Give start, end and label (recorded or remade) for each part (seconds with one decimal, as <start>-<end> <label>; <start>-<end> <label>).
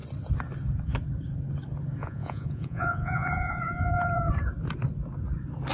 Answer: 0.0-2.0 recorded; 2.0-4.3 remade; 4.3-5.7 recorded